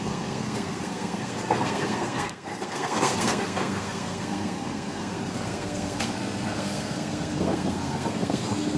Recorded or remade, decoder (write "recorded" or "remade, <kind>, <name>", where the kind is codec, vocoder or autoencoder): remade, codec, SNAC